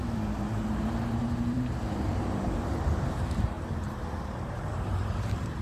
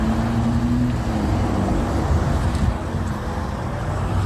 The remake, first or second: first